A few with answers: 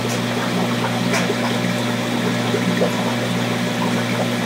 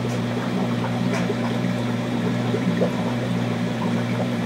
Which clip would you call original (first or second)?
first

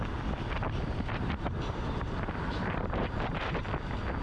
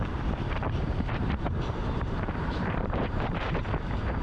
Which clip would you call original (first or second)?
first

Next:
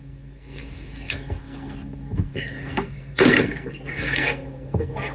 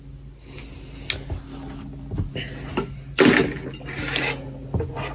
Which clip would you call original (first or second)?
second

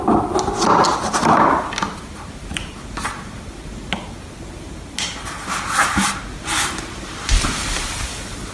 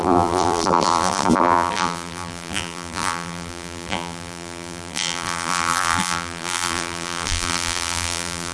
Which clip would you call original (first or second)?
first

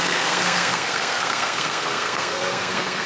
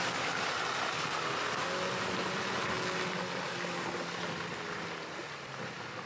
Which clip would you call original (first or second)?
second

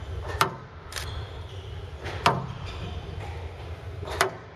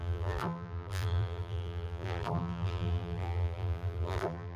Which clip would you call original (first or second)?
first